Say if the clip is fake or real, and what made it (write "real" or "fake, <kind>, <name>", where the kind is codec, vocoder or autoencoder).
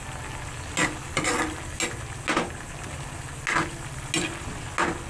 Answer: real